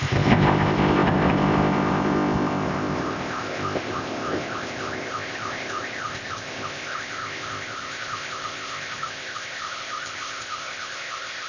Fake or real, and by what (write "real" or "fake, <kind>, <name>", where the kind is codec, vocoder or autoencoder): fake, codec, ZipCodec